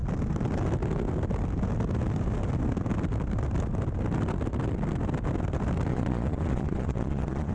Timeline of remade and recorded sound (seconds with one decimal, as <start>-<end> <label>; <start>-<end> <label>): 0.0-5.9 recorded; 5.9-7.5 remade